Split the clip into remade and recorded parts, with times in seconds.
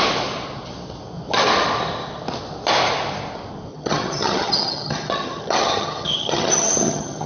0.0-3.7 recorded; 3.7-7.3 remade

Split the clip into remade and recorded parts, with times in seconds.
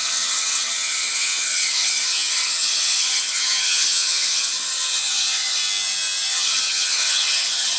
0.0-5.6 remade; 5.6-6.3 recorded; 6.3-7.8 remade